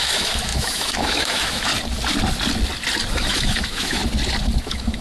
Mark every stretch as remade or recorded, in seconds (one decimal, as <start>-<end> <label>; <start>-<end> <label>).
0.0-1.7 remade; 1.7-3.1 recorded; 3.1-4.0 remade; 4.0-4.6 recorded; 4.6-5.0 remade